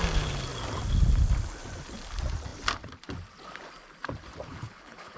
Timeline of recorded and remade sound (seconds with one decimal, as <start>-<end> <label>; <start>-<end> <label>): 0.0-4.5 recorded; 4.5-5.2 remade